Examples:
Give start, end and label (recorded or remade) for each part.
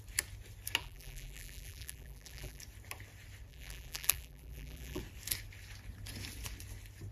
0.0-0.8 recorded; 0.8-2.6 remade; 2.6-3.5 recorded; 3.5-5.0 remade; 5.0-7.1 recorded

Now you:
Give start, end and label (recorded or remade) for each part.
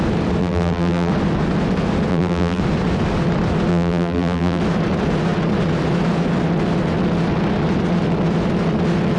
0.0-0.4 recorded; 0.4-1.1 remade; 1.1-2.1 recorded; 2.1-2.6 remade; 2.6-3.7 recorded; 3.7-4.6 remade; 4.6-9.2 recorded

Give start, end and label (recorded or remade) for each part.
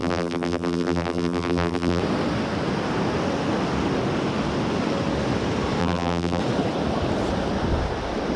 0.0-2.0 remade; 2.0-5.8 recorded; 5.8-6.4 remade; 6.4-8.4 recorded